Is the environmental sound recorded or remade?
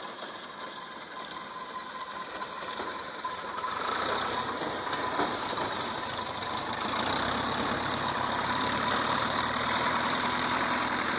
remade